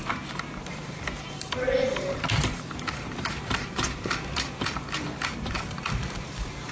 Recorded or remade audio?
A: remade